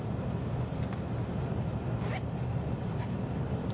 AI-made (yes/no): no